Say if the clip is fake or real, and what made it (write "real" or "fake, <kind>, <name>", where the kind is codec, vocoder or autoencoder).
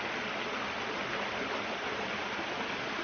real